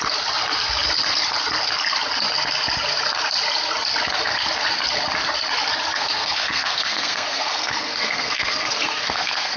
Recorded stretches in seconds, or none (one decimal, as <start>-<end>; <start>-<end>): 0.0-5.9